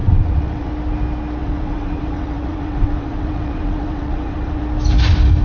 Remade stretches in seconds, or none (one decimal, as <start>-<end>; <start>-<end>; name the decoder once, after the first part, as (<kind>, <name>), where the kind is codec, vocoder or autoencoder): 0.0-0.7 (vocoder, WaveNeXt); 1.4-4.6